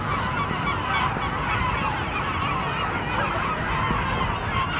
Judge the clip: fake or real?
real